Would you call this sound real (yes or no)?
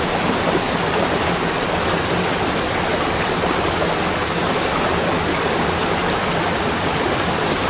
yes